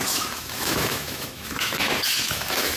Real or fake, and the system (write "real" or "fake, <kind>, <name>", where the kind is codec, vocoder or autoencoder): fake, autoencoder, DAC-VAE